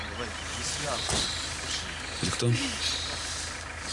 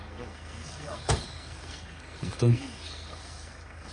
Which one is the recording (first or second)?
first